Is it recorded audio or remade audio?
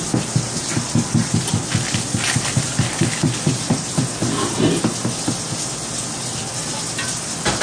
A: recorded